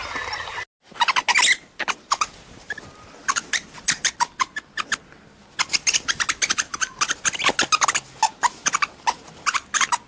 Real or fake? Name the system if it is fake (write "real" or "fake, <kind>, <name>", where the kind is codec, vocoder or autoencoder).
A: real